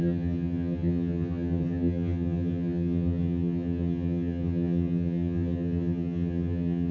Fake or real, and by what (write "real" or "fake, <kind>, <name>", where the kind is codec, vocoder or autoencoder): fake, vocoder, HiFi-GAN